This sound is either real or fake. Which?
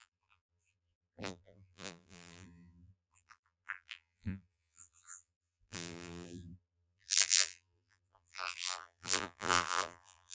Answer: fake